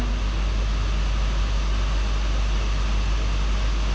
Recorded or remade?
recorded